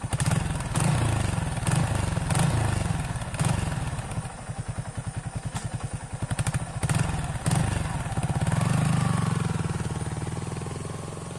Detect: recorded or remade recorded